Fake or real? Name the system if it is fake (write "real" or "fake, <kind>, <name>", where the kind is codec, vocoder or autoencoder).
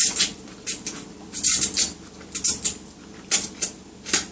real